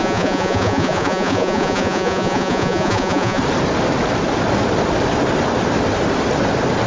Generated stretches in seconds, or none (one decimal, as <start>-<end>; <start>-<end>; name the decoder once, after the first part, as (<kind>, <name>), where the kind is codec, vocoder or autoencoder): 0.0-3.4 (vocoder, Vocos)